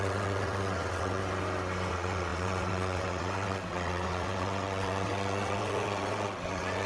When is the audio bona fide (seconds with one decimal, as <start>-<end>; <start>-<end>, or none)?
1.2-1.9